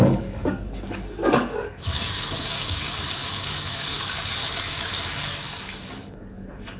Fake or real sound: fake